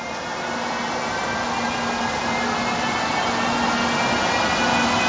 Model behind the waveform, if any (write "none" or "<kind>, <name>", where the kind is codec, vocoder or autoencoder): none